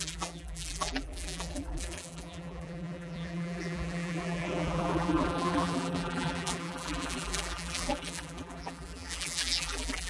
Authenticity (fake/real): fake